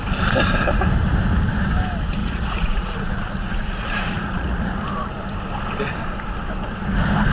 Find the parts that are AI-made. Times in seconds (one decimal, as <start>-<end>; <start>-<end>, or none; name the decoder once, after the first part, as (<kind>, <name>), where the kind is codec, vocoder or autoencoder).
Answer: 2.2-4.8 (vocoder, Vocos)